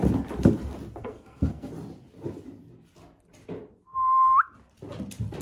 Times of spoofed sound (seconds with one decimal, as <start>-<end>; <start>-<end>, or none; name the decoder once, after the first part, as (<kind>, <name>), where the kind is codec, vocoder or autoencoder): 1.0-1.7 (codec, SNAC)